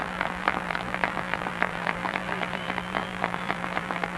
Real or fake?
fake